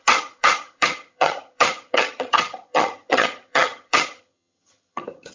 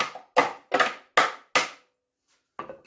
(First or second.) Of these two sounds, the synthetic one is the first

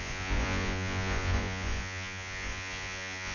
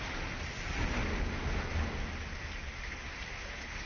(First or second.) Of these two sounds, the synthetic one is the first